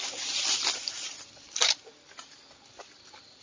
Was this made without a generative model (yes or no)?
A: yes